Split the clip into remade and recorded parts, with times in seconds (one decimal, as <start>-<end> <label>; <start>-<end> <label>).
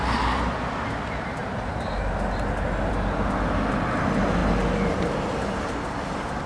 0.0-6.5 recorded